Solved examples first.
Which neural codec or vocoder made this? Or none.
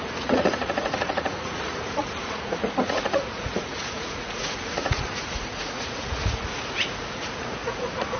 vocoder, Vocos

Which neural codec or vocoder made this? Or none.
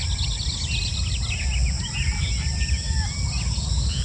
none